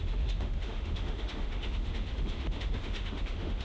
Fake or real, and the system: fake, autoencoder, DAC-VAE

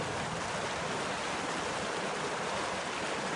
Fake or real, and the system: real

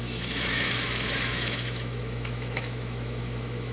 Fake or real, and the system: fake, autoencoder, DAC-VAE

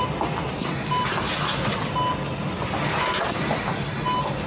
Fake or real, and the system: real